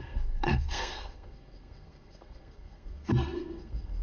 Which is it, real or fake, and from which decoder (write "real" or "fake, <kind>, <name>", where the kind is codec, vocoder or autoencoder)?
fake, codec, SNAC